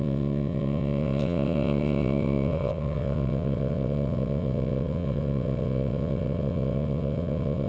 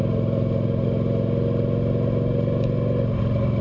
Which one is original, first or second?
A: second